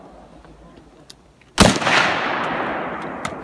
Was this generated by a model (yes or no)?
no